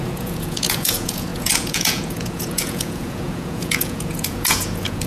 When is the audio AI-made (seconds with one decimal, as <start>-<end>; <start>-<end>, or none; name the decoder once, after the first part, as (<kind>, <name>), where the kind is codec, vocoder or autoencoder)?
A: 0.0-5.1 (vocoder, Vocos)